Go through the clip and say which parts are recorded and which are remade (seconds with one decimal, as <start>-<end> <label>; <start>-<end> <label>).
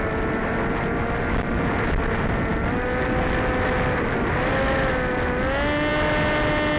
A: 0.0-6.8 recorded